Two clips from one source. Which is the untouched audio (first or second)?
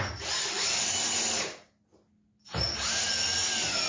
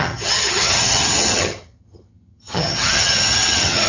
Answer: first